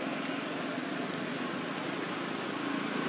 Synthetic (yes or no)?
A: no